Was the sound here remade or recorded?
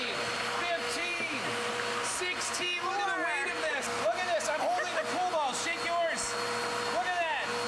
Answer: recorded